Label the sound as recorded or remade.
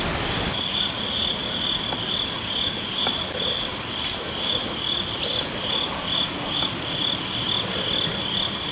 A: recorded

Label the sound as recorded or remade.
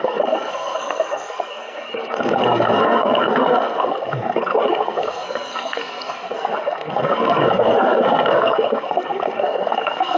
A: remade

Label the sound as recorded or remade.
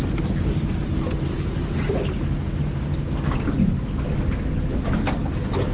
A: recorded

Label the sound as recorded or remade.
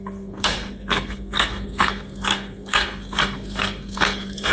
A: remade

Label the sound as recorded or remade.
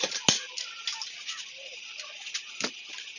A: recorded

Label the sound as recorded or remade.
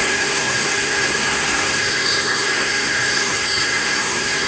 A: remade